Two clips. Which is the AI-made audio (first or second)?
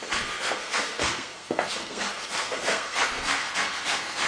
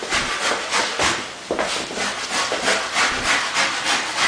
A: first